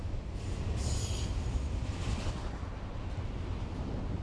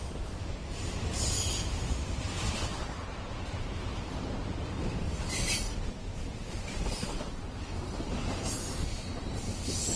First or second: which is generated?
second